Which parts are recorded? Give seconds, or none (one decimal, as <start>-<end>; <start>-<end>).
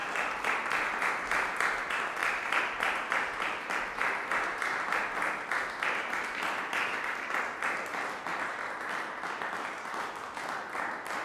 0.6-2.2; 7.4-8.3; 9.6-11.2